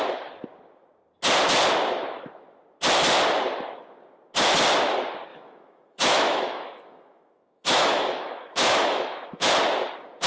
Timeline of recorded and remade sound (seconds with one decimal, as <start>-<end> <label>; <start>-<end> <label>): 0.0-5.3 recorded; 5.3-9.5 remade; 9.5-10.3 recorded